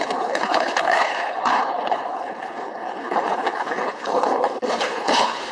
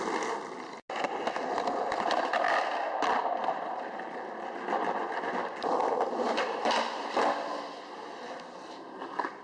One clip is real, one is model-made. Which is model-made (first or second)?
first